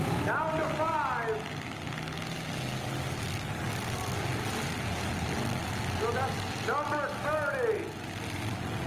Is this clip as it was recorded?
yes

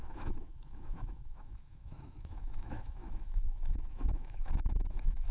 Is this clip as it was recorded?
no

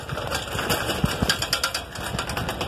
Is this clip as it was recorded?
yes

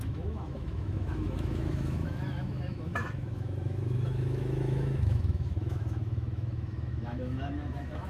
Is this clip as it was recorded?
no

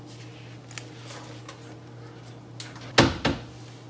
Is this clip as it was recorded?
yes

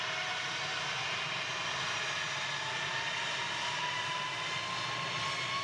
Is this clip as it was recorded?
yes